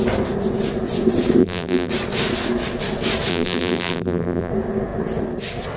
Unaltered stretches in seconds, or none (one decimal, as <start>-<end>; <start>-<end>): 0.0-1.4; 1.9-3.3; 4.5-5.8